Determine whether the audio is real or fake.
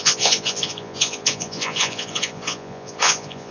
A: fake